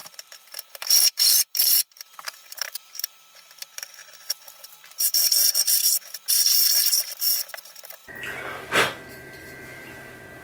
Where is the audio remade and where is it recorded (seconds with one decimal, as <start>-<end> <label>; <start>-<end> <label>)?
0.0-4.0 remade; 4.0-4.7 recorded; 4.7-8.0 remade; 8.0-9.1 recorded; 9.1-10.4 remade